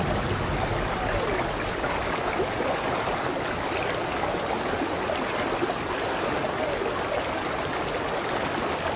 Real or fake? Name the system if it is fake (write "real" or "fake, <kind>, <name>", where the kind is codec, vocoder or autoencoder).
real